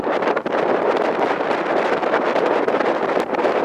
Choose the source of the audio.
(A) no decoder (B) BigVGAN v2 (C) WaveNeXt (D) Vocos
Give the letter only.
B